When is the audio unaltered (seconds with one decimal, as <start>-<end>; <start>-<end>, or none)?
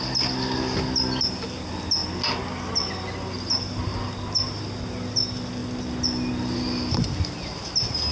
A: 0.0-8.1